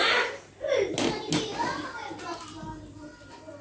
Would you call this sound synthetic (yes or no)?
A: no